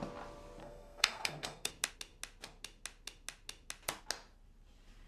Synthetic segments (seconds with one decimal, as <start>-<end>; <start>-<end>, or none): 0.6-1.7